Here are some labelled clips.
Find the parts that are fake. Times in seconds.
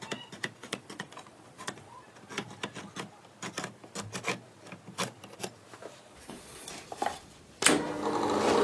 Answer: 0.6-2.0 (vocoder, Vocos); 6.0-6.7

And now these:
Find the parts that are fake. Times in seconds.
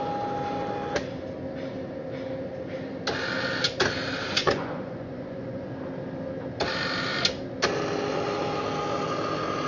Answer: 4.4-5.7 (vocoder, Vocos)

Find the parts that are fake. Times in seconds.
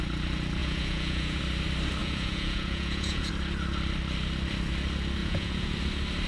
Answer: 0.6-1.4 (vocoder, Vocos); 2.0-3.3; 5.2-5.7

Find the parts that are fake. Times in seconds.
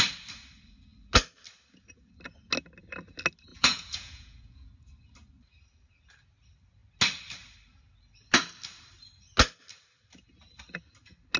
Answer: 3.5-4.7 (vocoder, Vocos)